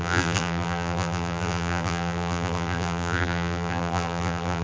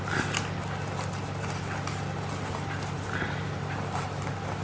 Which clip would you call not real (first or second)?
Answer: first